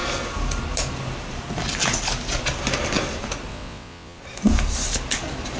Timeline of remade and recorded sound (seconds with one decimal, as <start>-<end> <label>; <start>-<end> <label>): 0.0-3.5 recorded; 3.5-4.2 remade; 4.2-5.6 recorded